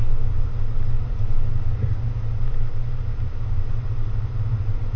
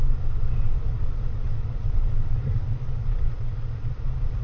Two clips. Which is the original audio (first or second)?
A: first